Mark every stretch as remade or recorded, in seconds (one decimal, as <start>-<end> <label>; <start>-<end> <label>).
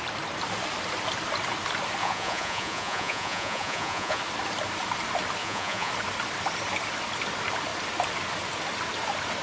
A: 0.0-2.0 recorded; 2.0-4.2 remade; 4.2-5.4 recorded; 5.4-5.9 remade; 5.9-9.4 recorded